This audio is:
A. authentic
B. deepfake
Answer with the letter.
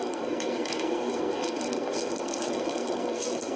B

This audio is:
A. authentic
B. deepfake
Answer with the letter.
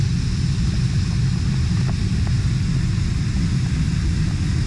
A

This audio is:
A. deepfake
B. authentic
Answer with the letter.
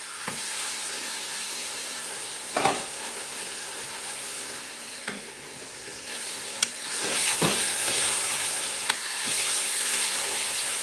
A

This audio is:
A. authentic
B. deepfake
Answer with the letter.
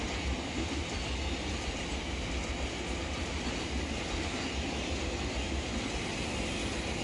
A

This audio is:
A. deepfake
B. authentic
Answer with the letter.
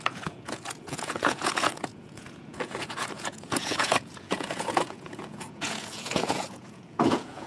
A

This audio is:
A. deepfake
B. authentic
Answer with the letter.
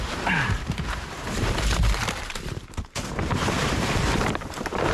A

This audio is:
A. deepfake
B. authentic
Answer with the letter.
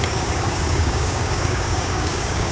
A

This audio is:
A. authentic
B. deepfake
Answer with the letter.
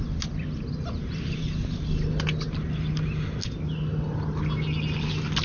A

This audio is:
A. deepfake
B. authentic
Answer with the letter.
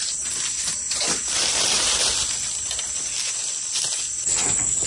B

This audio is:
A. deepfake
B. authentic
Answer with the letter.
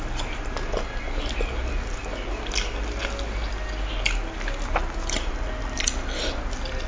B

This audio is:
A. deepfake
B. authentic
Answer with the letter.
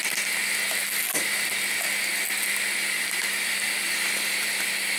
B